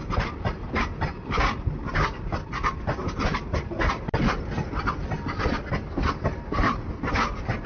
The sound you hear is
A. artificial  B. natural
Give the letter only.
B